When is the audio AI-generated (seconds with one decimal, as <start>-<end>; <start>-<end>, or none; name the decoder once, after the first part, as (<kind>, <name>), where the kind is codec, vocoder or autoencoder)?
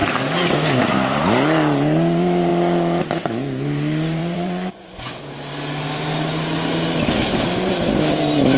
4.2-5.2 (vocoder, Vocos)